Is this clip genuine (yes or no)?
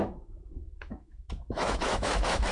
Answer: no